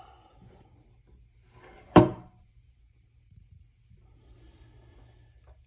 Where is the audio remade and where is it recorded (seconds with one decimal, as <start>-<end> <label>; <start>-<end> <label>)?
0.0-2.1 recorded; 2.1-2.8 remade; 2.8-5.7 recorded